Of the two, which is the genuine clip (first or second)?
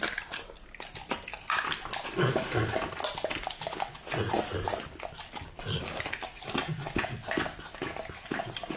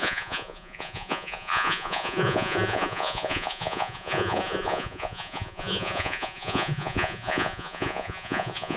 first